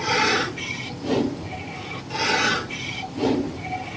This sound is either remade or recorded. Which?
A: recorded